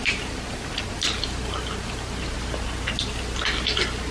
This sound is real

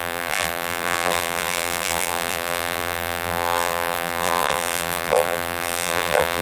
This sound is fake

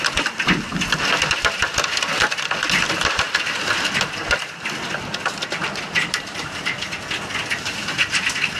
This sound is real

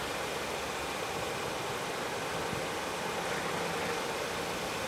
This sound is real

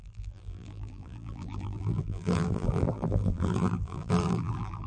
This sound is fake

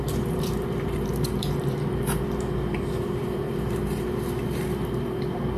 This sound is fake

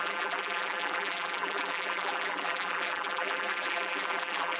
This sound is fake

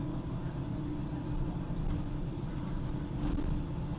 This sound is fake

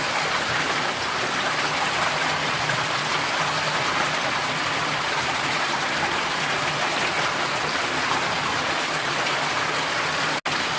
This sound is real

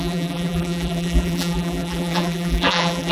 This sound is fake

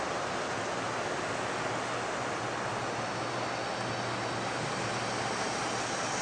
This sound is real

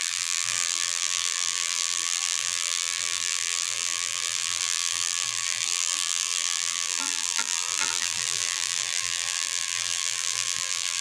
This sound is fake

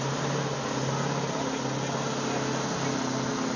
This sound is real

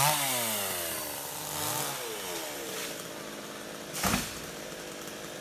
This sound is real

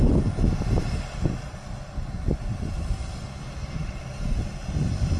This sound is real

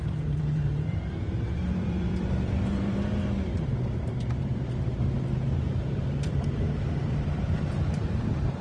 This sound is fake